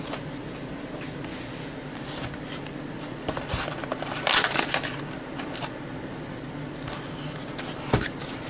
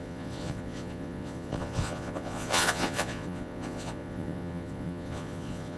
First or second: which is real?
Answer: first